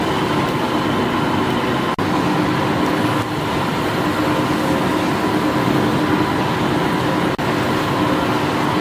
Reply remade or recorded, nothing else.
recorded